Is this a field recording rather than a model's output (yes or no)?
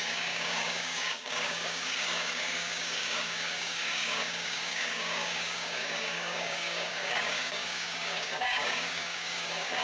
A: no